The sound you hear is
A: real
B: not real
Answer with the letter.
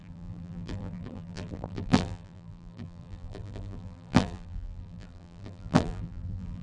B